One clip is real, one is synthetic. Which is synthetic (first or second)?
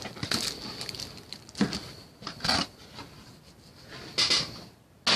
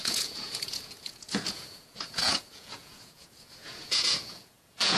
second